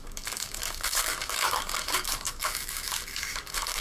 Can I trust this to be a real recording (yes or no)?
no